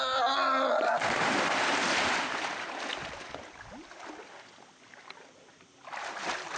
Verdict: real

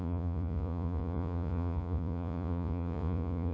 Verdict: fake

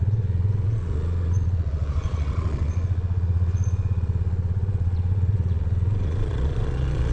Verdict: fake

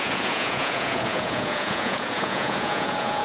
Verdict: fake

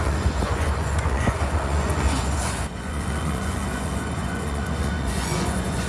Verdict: fake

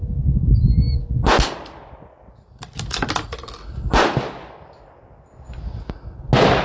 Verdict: real